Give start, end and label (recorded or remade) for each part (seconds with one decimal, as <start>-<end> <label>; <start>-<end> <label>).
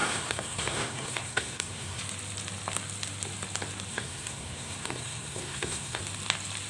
0.0-2.0 remade; 2.0-3.9 recorded; 3.9-6.0 remade; 6.0-6.7 recorded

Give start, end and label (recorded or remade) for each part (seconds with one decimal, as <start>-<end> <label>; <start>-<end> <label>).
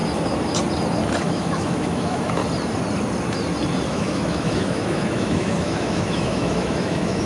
0.0-1.2 recorded; 1.2-2.4 remade; 2.4-3.9 recorded; 3.9-7.3 remade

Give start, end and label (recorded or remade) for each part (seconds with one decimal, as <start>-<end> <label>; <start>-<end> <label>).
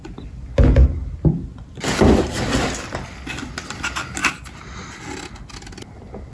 0.0-6.3 recorded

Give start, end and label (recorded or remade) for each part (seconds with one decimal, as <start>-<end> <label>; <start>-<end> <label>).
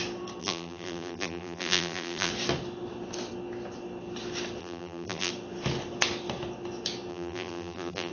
0.0-0.4 recorded; 0.4-2.3 remade; 2.3-4.6 recorded; 4.6-5.3 remade; 5.3-7.1 recorded; 7.1-8.1 remade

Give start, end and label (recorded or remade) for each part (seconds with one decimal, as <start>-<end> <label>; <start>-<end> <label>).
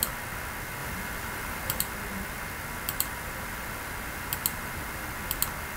0.0-5.8 recorded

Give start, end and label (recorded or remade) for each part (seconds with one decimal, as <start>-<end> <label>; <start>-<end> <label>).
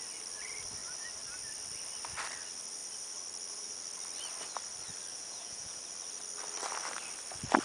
0.0-5.1 recorded; 5.1-5.8 remade; 5.8-7.6 recorded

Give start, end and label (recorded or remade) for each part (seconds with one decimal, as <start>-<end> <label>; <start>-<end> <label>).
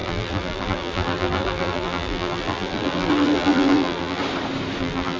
0.0-4.2 remade; 4.2-4.8 recorded; 4.8-5.2 remade